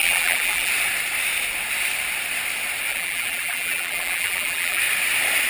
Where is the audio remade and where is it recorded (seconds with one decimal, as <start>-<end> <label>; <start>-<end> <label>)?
0.0-0.7 remade; 0.7-2.9 recorded; 2.9-4.8 remade; 4.8-5.5 recorded